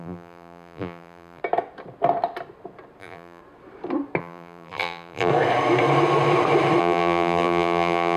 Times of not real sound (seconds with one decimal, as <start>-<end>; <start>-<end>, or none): 0.0-1.4; 3.0-3.4; 4.2-5.3; 6.8-8.2